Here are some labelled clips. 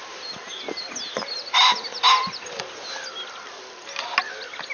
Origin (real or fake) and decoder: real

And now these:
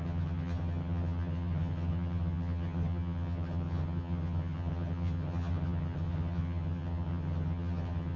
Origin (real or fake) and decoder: fake, vocoder, HiFi-GAN